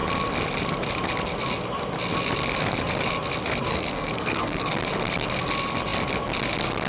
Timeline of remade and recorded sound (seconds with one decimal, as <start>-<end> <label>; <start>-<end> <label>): 0.0-3.7 recorded; 3.7-4.8 remade; 4.8-6.9 recorded